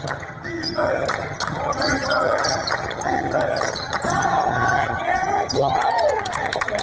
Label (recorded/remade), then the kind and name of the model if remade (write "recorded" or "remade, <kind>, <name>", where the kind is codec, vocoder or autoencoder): remade, vocoder, HiFi-GAN